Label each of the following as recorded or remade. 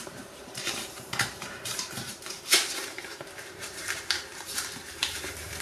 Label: remade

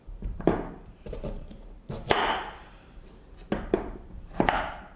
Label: remade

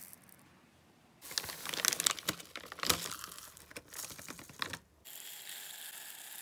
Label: recorded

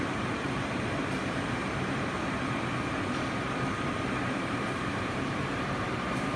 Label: remade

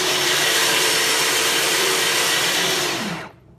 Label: remade